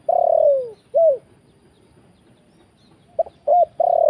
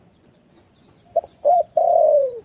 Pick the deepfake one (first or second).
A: second